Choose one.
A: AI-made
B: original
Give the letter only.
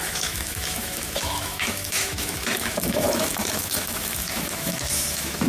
A